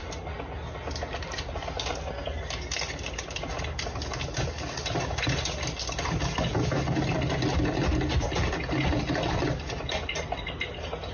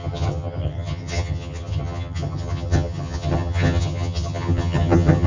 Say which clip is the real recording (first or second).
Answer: first